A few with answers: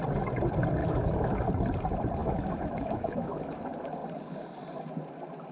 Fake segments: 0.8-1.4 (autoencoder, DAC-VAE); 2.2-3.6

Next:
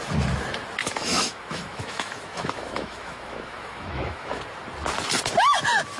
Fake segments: 0.8-4.4 (autoencoder, DAC-VAE)

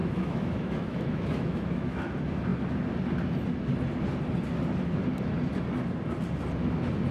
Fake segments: 0.0-2.1 (autoencoder, DAC-VAE)